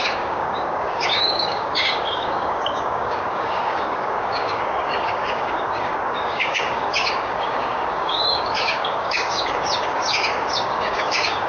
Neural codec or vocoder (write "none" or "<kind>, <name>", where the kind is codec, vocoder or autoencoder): codec, DAC